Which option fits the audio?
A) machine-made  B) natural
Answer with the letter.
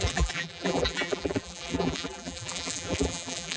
A